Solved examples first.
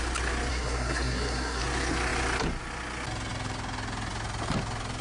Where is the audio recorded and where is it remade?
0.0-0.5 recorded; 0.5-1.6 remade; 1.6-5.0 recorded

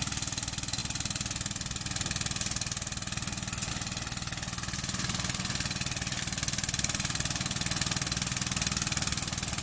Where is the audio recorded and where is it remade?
0.0-9.6 recorded

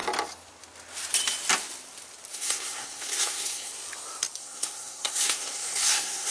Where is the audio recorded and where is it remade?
0.0-2.3 recorded; 2.3-3.7 remade; 3.7-4.4 recorded; 4.4-6.3 remade

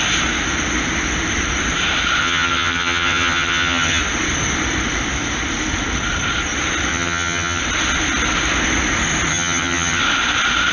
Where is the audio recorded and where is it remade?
0.0-2.2 recorded; 2.2-4.0 remade; 4.0-6.9 recorded; 6.9-7.6 remade; 7.6-9.3 recorded; 9.3-10.0 remade; 10.0-10.7 recorded